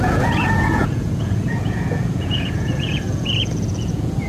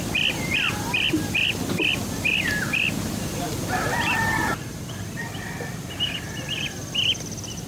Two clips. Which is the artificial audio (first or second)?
first